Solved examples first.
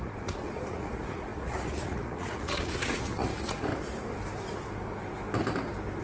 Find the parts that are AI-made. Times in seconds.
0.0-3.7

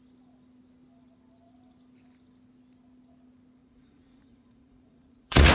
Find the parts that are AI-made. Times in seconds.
3.6-5.5

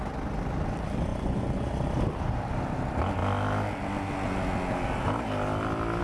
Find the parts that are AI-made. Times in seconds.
1.1-1.7

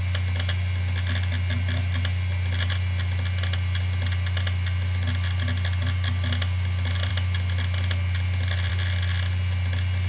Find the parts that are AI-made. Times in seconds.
none

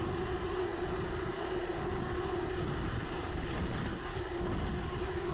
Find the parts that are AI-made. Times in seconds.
none

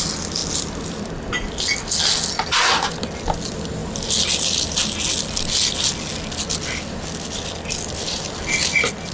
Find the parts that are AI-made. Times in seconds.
none

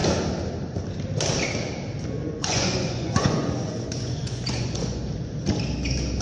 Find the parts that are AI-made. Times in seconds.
2.2-5.0